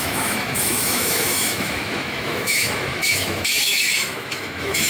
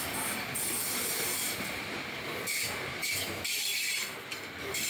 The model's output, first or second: first